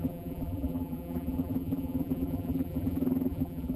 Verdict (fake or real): fake